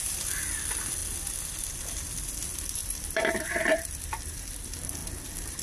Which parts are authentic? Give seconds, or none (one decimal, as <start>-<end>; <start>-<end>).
0.0-2.8; 4.3-5.6